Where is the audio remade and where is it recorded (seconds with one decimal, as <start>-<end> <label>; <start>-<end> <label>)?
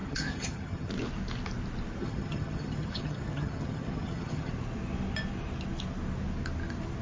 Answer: 0.0-0.9 remade; 0.9-2.0 recorded; 2.0-4.5 remade; 4.5-7.0 recorded